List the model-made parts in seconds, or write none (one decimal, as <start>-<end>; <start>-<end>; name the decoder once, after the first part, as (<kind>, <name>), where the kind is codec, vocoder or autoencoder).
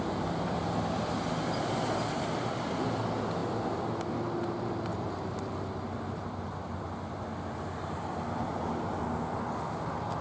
none